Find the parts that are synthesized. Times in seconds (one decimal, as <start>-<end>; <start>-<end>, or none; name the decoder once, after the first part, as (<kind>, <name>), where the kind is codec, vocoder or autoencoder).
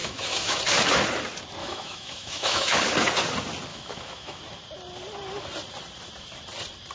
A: 0.0-0.6 (autoencoder, DAC-VAE); 1.6-2.8; 3.7-4.4